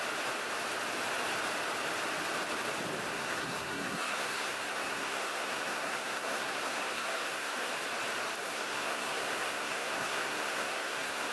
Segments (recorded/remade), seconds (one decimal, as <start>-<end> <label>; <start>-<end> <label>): 0.0-3.1 recorded; 3.1-7.7 remade; 7.7-8.4 recorded; 8.4-11.3 remade